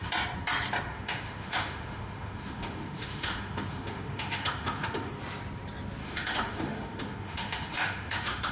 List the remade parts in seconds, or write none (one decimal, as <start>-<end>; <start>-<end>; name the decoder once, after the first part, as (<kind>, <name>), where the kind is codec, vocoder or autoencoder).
0.9-5.1 (autoencoder, DAC-VAE); 6.0-8.5

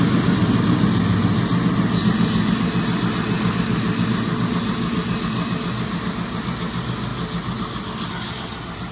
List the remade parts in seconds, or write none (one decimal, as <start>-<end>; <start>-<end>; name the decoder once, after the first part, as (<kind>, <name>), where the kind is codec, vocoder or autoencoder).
none

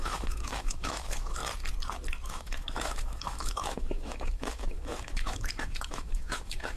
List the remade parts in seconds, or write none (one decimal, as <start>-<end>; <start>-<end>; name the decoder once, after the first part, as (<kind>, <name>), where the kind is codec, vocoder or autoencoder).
0.0-1.4 (autoencoder, DAC-VAE); 2.3-6.8

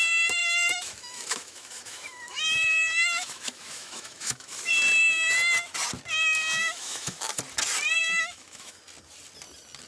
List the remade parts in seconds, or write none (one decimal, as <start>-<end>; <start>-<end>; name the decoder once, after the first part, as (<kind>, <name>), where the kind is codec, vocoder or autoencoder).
0.4-4.7 (autoencoder, DAC-VAE); 6.6-7.4; 8.0-8.8

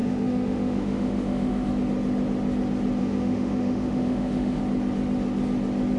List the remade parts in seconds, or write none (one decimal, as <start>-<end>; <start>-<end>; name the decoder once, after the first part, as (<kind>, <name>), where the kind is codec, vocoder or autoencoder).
0.0-1.7 (autoencoder, DAC-VAE); 3.0-4.6

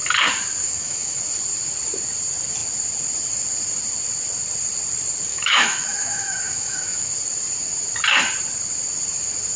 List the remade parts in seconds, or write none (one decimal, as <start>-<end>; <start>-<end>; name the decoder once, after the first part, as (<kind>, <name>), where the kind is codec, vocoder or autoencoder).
0.6-1.2 (autoencoder, DAC-VAE); 5.3-7.1